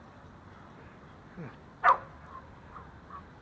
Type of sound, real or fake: real